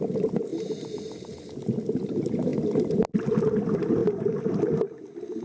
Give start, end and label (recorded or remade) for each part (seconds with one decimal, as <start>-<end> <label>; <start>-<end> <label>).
0.0-0.5 recorded; 0.5-1.4 remade; 1.4-4.0 recorded; 4.0-5.4 remade